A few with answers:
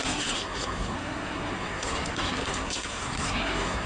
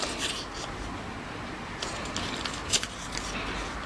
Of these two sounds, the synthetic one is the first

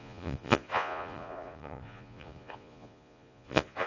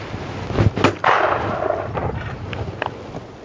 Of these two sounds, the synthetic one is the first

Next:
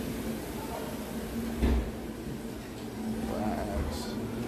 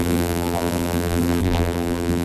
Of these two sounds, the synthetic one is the second